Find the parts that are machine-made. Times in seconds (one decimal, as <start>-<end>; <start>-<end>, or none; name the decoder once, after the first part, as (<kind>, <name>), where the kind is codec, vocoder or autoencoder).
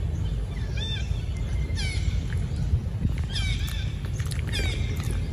none